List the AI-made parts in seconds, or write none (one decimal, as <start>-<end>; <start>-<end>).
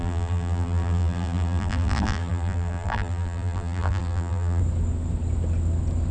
0.0-4.6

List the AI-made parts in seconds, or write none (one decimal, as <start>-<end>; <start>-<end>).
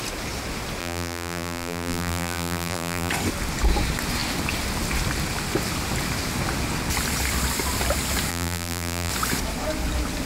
0.8-3.1; 8.3-9.1